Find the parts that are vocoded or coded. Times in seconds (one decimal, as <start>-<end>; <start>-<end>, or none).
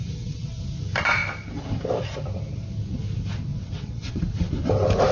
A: 0.0-0.6; 3.5-4.2